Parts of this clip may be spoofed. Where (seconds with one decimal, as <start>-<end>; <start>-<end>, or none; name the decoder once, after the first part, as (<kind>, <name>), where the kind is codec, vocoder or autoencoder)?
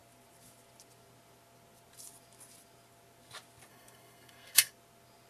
3.7-4.7 (codec, SNAC)